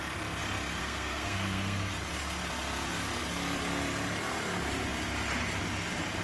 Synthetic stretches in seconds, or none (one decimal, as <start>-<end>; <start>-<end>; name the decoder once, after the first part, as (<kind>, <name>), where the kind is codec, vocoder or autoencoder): 0.8-1.9 (codec, SNAC)

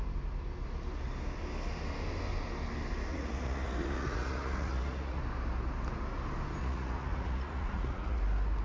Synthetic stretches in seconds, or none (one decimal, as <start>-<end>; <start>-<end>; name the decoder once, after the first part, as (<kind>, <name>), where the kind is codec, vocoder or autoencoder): 3.1-5.2 (vocoder, Vocos); 6.6-8.2